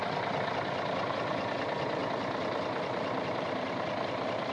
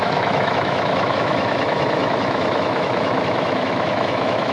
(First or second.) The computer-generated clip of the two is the second